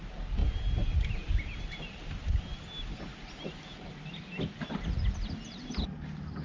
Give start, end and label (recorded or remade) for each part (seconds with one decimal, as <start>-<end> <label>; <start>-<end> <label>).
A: 0.0-6.4 recorded